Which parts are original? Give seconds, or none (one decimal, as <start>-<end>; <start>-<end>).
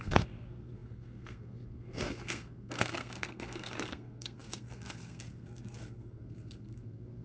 none